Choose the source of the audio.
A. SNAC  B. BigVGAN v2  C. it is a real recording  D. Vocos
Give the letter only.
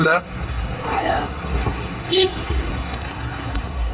A